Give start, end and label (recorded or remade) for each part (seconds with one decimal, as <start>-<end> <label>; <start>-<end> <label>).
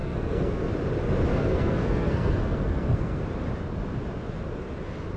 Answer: 0.0-0.7 remade; 0.7-1.3 recorded; 1.3-3.2 remade; 3.2-5.2 recorded